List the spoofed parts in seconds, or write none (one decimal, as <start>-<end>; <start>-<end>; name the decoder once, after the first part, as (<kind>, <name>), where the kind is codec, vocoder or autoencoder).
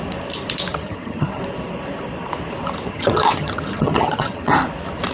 0.7-1.4 (vocoder, HiFi-GAN); 2.9-4.5